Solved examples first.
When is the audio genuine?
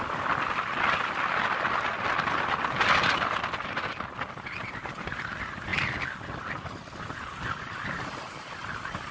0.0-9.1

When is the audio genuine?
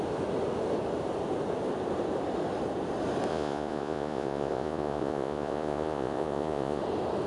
0.0-3.3; 6.8-7.3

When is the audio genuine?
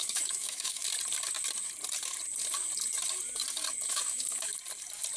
0.8-3.9; 4.5-5.2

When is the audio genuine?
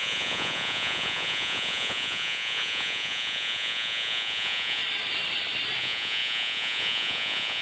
4.8-5.8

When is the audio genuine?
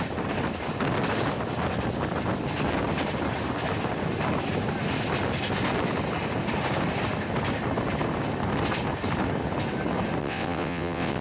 0.0-10.2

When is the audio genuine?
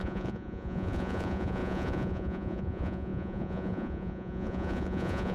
none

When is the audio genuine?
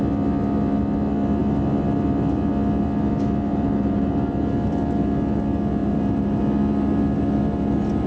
0.0-3.5; 4.1-5.8; 6.4-8.1